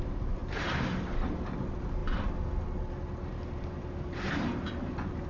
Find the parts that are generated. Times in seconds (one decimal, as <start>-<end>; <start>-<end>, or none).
0.0-0.4; 1.5-2.0; 4.1-5.3